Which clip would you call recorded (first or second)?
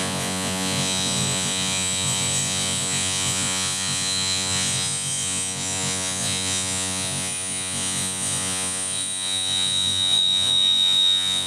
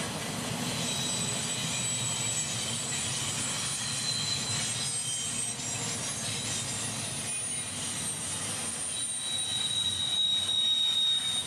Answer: second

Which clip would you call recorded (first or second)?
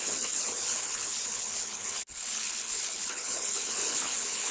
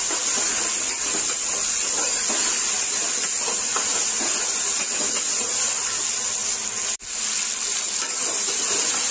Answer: second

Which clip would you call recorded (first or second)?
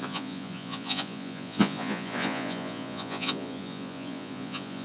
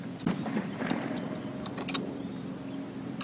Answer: second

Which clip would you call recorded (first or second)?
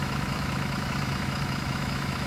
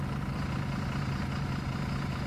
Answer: second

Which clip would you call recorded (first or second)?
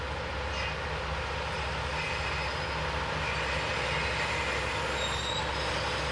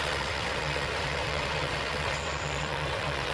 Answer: first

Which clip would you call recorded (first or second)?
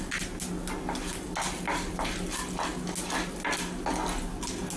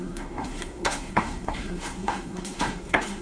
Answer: first